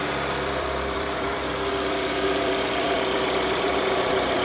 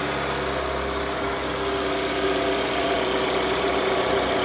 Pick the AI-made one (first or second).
first